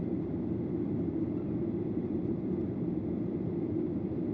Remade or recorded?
recorded